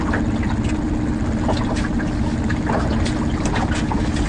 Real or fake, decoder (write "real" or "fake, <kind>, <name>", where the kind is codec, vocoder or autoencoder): real